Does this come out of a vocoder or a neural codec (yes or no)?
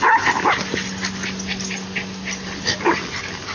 no